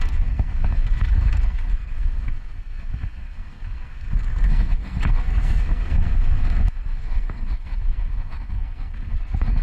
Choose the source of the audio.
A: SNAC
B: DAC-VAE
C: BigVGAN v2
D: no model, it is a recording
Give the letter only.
A